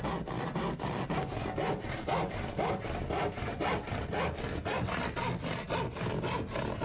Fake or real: real